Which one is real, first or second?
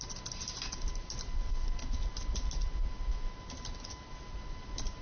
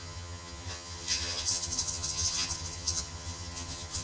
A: first